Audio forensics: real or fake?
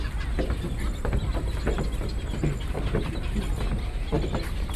real